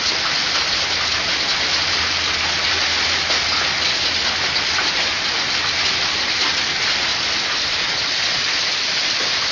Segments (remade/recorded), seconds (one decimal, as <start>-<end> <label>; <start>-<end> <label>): 0.0-7.1 recorded; 7.1-9.5 remade